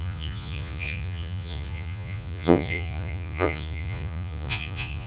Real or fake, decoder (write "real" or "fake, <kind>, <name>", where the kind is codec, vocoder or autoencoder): fake, vocoder, Vocos